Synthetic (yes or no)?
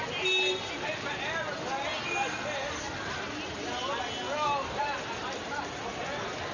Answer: no